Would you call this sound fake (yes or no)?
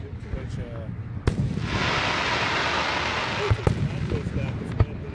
no